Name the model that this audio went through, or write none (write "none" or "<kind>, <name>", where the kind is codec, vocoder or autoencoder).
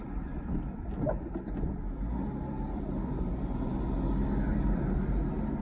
none